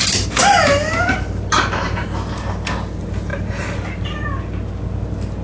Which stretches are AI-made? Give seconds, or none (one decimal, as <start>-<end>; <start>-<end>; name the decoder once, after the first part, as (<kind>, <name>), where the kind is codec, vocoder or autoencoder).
none